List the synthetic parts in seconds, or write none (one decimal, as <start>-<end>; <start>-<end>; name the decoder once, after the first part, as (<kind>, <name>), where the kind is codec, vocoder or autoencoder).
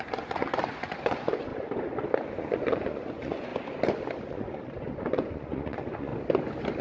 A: 0.0-1.5 (vocoder, Vocos); 2.3-3.5; 4.3-6.1